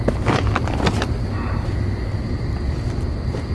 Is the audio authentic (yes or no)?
yes